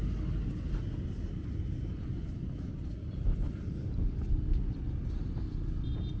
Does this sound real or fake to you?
real